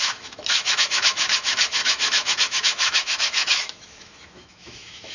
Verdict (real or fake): fake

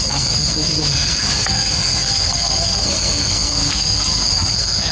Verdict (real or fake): fake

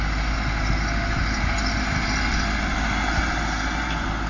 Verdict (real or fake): real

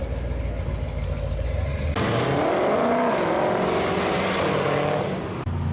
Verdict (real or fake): real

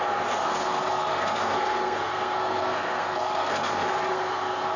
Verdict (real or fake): fake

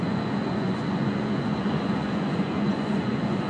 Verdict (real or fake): fake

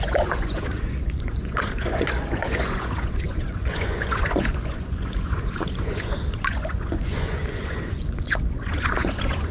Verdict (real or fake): fake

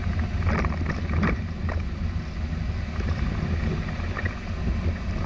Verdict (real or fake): real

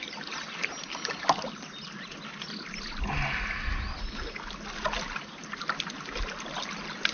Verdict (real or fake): real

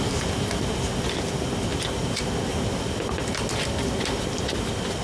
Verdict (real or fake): real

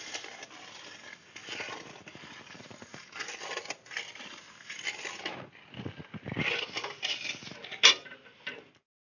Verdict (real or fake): real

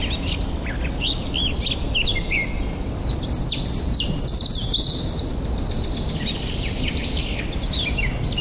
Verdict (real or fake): real